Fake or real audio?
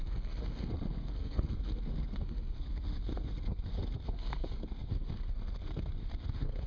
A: fake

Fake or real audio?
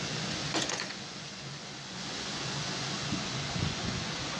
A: fake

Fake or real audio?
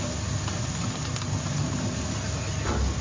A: real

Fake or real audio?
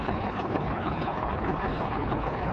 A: fake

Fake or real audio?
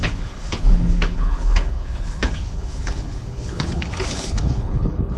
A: fake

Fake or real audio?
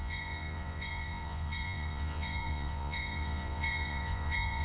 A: fake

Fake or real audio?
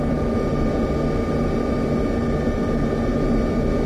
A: real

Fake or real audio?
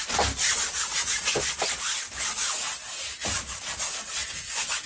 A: real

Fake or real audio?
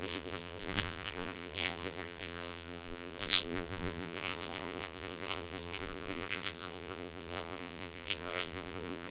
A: fake